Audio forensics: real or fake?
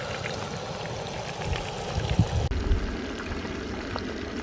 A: real